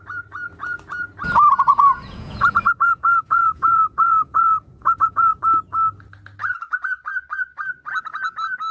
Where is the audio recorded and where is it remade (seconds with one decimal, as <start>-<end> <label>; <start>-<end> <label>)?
0.0-1.7 recorded; 1.7-5.4 remade; 5.4-8.7 recorded